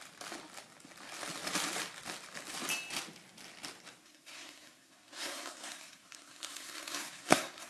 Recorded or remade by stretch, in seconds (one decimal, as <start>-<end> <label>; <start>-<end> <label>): 0.0-4.0 recorded; 4.0-7.7 remade